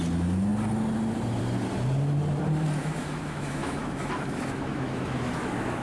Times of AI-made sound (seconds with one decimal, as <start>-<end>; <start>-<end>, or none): 2.8-5.8